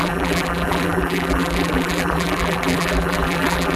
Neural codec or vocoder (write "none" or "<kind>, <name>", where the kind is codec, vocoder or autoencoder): vocoder, BigVGAN v2